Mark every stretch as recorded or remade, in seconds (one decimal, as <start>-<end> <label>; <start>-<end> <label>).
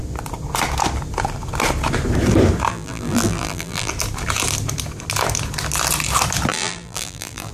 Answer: 0.0-2.7 recorded; 2.7-3.9 remade; 3.9-6.5 recorded; 6.5-7.5 remade